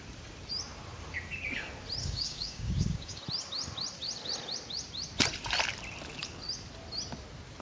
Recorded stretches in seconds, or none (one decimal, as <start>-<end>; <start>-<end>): 0.0-2.0; 3.2-7.6